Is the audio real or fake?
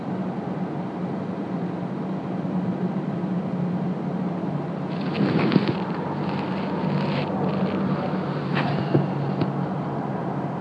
real